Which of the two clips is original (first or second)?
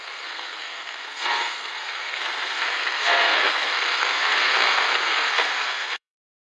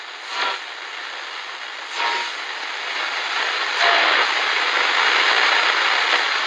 second